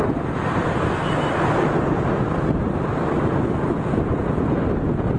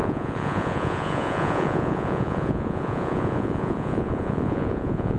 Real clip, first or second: first